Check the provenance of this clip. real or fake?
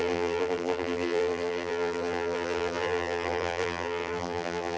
fake